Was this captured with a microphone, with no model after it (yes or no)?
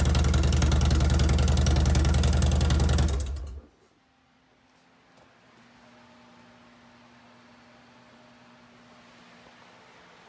yes